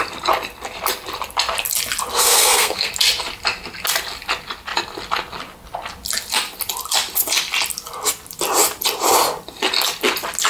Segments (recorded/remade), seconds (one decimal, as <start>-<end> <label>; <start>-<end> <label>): 0.0-2.1 recorded; 2.1-2.9 remade; 2.9-10.5 recorded